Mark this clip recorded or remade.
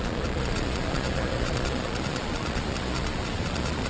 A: remade